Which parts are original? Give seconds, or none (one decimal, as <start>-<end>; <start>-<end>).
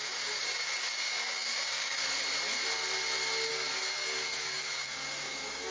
2.0-3.5